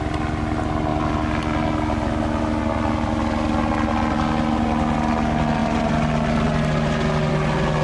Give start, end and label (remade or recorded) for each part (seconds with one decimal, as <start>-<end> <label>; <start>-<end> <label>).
0.0-7.8 recorded